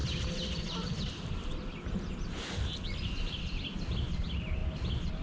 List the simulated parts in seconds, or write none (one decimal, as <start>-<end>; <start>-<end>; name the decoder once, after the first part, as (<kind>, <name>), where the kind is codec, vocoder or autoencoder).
none